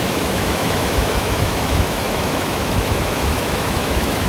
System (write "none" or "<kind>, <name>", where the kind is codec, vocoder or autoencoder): autoencoder, DAC-VAE